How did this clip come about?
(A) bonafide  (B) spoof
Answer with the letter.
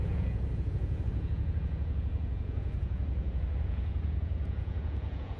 B